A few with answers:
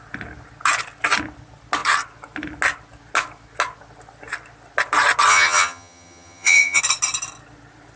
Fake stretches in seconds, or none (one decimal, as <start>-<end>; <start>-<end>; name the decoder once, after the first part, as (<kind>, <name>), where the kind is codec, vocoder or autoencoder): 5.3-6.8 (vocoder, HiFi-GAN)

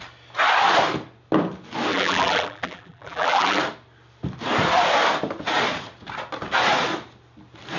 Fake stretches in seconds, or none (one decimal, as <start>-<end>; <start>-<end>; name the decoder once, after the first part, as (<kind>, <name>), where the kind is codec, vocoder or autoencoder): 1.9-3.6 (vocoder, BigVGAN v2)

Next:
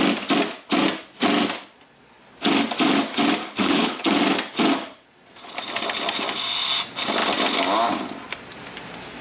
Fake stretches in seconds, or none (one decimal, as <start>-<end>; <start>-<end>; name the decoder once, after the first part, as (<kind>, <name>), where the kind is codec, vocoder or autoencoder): 3.4-4.2 (codec, HILCodec)

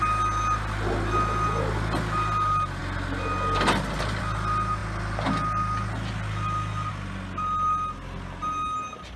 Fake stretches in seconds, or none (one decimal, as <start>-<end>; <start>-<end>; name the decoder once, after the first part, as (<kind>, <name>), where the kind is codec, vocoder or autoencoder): none

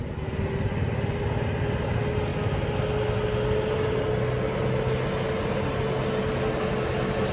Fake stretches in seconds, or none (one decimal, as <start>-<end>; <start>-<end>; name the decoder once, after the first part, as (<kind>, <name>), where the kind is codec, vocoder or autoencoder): none

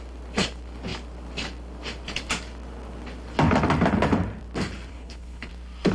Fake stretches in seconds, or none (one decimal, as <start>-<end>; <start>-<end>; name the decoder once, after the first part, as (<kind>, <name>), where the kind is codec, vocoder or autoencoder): 4.9-5.5 (codec, HILCodec)